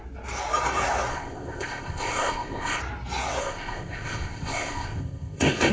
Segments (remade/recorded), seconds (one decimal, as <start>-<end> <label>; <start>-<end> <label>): 0.0-1.1 recorded; 1.1-2.8 remade; 2.8-3.4 recorded; 3.4-5.7 remade